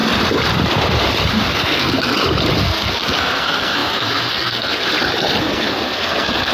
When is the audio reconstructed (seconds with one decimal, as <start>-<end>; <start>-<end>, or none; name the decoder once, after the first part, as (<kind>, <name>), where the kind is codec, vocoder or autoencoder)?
1.5-2.1 (codec, SNAC); 2.6-4.9; 5.4-6.5

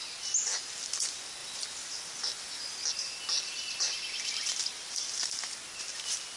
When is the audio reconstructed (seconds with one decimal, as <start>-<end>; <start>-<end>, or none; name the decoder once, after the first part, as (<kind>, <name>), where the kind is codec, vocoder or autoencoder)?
none

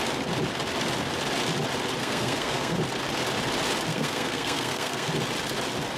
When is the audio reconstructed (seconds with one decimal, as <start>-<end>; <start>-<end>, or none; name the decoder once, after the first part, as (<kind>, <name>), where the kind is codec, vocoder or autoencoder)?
2.0-2.8 (codec, SNAC); 3.9-5.1

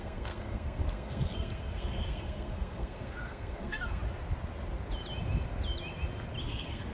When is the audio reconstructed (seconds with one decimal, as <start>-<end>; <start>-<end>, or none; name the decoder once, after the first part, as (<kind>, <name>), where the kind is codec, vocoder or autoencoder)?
0.0-4.0 (codec, SNAC); 6.4-6.9